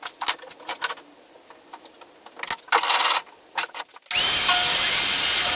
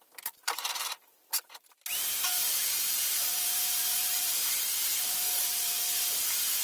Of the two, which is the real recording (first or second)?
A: first